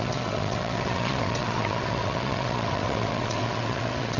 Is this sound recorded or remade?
remade